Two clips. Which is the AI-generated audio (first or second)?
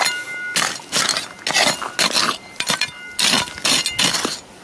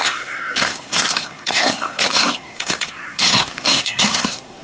second